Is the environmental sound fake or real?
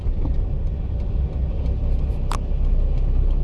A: real